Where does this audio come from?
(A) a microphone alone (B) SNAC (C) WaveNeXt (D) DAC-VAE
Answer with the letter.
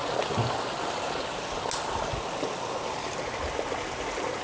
A